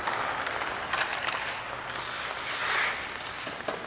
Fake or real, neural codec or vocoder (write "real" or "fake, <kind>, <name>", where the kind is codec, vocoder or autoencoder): real